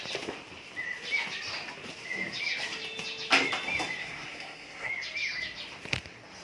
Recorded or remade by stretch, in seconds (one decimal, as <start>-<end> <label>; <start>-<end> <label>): 0.0-4.0 recorded; 4.0-4.9 remade; 4.9-6.4 recorded